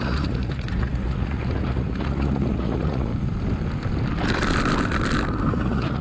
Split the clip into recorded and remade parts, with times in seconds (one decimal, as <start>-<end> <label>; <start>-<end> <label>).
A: 0.0-3.1 remade; 3.1-5.5 recorded; 5.5-6.0 remade